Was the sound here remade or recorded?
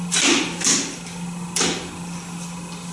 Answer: recorded